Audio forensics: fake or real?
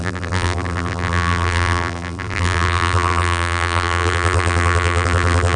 fake